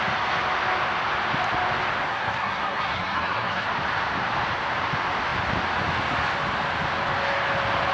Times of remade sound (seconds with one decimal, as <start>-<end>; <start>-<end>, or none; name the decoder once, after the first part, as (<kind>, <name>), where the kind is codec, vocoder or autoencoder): 2.1-3.7 (codec, SNAC)